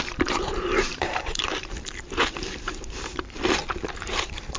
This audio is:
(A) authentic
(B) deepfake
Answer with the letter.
B